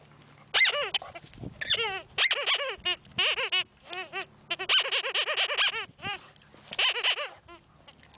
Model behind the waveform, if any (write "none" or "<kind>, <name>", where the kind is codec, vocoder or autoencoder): none